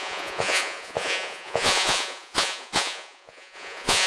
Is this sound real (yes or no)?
no